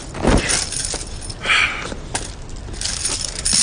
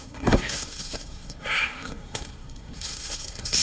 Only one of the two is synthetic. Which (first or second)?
second